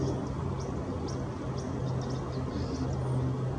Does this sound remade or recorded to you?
recorded